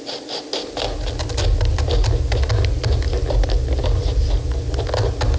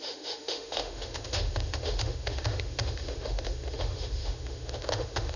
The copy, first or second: second